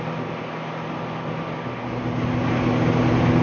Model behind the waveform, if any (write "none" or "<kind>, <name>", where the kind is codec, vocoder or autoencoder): none